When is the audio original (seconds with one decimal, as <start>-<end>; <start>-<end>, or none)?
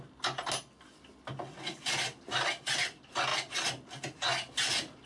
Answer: 0.0-5.1